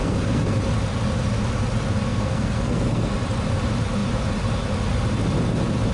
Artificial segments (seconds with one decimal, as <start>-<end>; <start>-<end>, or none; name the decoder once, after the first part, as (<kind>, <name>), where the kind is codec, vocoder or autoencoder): 0.0-0.6 (codec, SNAC); 2.1-3.1